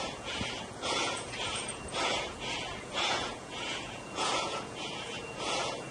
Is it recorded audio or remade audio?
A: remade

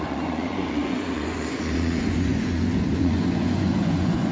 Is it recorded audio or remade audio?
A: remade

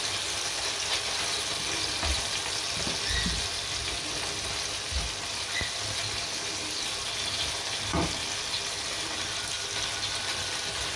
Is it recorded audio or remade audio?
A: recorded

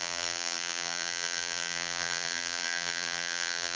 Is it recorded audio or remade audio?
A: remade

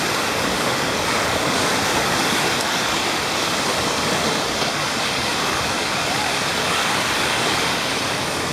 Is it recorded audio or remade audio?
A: remade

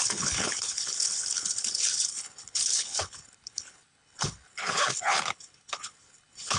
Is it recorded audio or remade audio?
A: remade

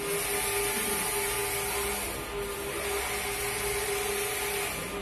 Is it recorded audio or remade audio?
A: recorded